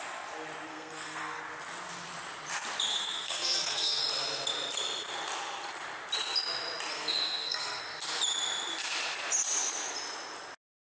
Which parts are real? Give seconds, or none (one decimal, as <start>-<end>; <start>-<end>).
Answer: 0.0-0.7; 1.4-2.9; 4.0-6.9; 7.8-10.8